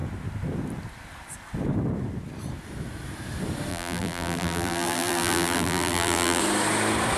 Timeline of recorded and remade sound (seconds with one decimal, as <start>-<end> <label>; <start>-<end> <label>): 0.0-3.7 recorded; 3.7-6.4 remade; 6.4-7.2 recorded

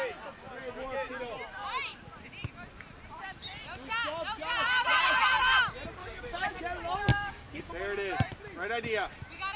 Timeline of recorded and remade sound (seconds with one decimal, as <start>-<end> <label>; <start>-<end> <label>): 0.0-6.0 recorded; 6.0-6.6 remade; 6.6-7.1 recorded; 7.1-7.7 remade; 7.7-9.6 recorded

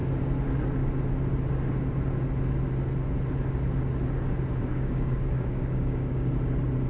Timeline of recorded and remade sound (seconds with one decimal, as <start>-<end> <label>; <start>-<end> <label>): 0.0-4.7 recorded; 4.7-6.4 remade; 6.4-6.9 recorded

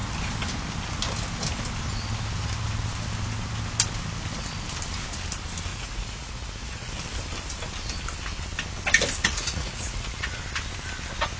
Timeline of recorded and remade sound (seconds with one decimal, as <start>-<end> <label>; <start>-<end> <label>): 0.0-5.7 recorded; 5.7-6.9 remade; 6.9-9.2 recorded; 9.2-10.4 remade; 10.4-11.4 recorded

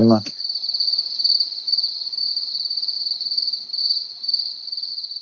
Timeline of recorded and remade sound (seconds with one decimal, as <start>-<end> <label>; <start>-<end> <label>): 0.0-5.2 recorded